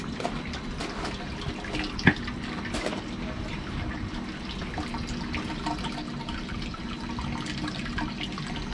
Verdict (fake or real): real